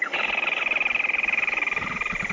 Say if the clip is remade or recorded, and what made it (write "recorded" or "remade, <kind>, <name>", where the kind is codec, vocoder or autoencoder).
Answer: recorded